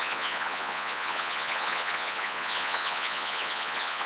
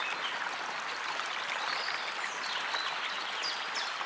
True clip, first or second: second